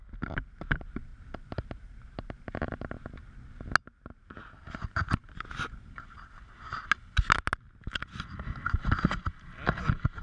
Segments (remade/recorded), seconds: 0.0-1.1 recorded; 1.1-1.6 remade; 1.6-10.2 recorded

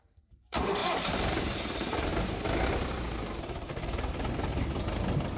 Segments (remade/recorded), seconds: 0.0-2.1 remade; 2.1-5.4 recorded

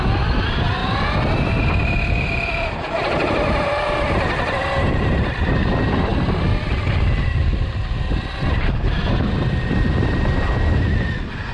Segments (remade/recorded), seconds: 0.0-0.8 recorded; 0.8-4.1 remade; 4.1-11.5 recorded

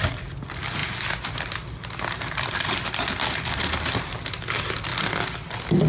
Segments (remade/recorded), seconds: 0.0-0.8 recorded; 0.8-4.3 remade; 4.3-5.9 recorded

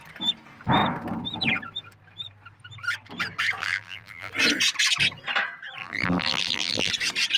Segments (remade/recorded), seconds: 0.0-3.6 recorded; 3.6-4.3 remade; 4.3-5.8 recorded; 5.8-6.9 remade; 6.9-7.4 recorded

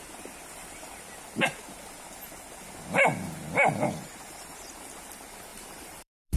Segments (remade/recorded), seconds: 0.0-5.5 recorded; 5.5-6.4 remade